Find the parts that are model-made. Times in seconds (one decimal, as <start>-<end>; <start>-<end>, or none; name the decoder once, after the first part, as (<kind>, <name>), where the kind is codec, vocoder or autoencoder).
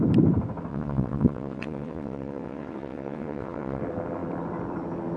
0.7-3.8 (vocoder, WaveNeXt)